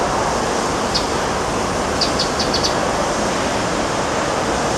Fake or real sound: real